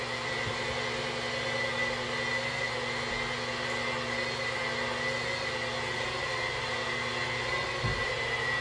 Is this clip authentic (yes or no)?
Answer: yes